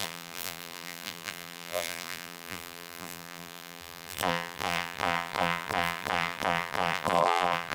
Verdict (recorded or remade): remade